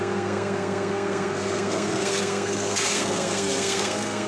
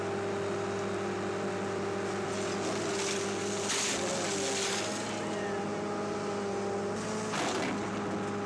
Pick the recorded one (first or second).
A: second